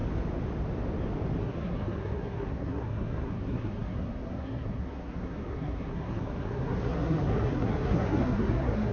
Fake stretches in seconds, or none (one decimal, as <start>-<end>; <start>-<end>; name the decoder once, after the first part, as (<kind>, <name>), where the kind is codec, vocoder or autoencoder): 1.4-8.9 (codec, SNAC)